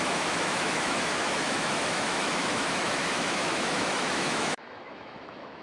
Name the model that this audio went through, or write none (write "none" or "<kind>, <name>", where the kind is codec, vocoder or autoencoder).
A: autoencoder, DAC-VAE